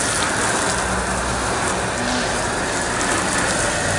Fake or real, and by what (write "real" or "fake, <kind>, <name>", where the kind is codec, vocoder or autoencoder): real